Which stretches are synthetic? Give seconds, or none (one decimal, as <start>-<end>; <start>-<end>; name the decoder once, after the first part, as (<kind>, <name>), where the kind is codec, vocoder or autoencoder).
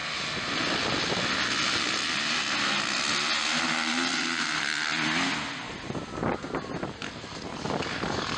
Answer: 7.5-8.4 (codec, DAC)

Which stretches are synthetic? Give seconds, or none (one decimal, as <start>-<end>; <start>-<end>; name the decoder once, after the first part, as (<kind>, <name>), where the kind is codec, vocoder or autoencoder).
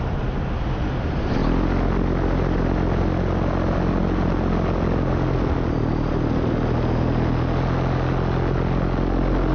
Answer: none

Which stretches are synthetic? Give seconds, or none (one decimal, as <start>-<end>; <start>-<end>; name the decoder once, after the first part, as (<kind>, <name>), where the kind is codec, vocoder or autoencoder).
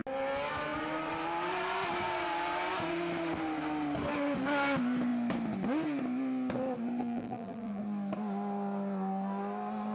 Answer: 7.0-7.8 (vocoder, BigVGAN v2)